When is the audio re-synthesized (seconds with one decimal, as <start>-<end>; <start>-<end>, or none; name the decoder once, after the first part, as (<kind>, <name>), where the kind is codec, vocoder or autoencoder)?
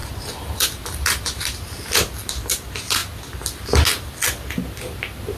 0.0-1.8 (vocoder, BigVGAN v2)